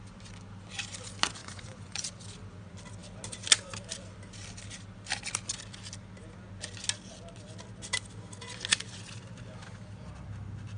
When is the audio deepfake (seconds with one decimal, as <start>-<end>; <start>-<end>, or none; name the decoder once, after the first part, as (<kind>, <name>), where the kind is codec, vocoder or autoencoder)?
1.4-2.1 (vocoder, Vocos)